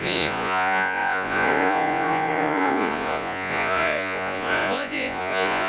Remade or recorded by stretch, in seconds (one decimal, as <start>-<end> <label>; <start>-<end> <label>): 0.0-5.7 remade